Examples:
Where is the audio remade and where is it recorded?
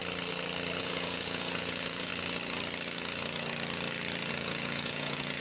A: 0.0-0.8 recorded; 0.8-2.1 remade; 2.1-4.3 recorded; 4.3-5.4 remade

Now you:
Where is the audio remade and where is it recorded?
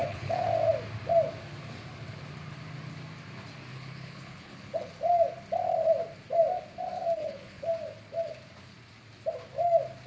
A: 0.0-0.5 remade; 0.5-3.7 recorded; 3.7-4.9 remade; 4.9-7.2 recorded; 7.2-7.7 remade; 7.7-10.1 recorded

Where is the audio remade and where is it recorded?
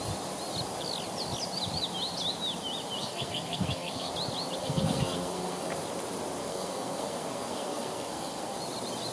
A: 0.0-3.0 recorded; 3.0-4.1 remade; 4.1-4.6 recorded; 4.6-5.7 remade; 5.7-6.4 recorded; 6.4-8.6 remade; 8.6-9.1 recorded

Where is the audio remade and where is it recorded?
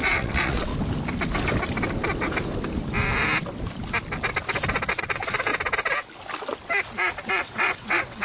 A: 0.0-0.7 remade; 0.7-4.9 recorded; 4.9-5.5 remade; 5.5-7.3 recorded; 7.3-8.2 remade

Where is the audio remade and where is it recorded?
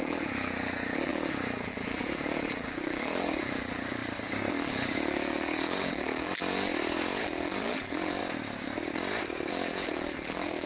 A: 0.0-4.0 remade; 4.0-4.5 recorded; 4.5-6.7 remade; 6.7-7.2 recorded; 7.2-8.2 remade; 8.2-9.5 recorded; 9.5-10.7 remade